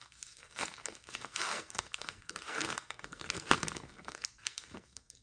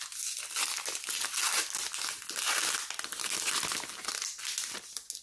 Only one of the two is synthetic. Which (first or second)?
first